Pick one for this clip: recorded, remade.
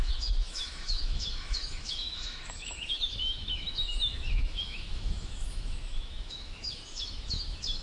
remade